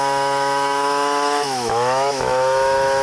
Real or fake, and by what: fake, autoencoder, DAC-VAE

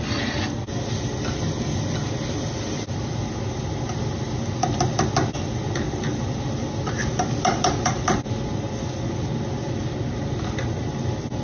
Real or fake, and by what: real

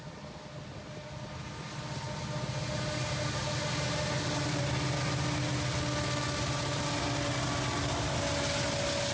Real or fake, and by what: real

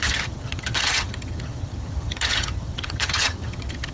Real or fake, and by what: fake, vocoder, HiFi-GAN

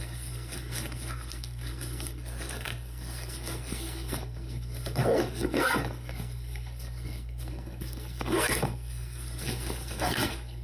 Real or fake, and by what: fake, codec, SNAC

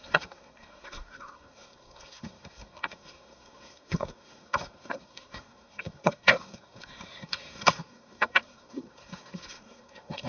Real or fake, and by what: fake, codec, SNAC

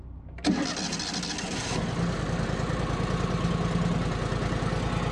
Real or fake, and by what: real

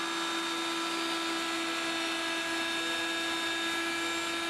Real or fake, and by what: real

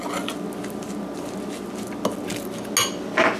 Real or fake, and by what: real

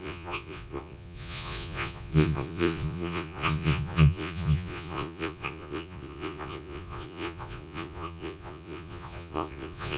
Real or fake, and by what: fake, vocoder, Vocos